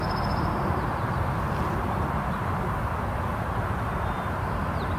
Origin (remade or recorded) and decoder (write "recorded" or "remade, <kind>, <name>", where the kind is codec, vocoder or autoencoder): recorded